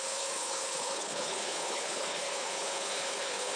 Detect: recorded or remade remade